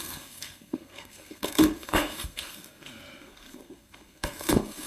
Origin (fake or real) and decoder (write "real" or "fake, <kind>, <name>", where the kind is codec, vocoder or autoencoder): fake, codec, SNAC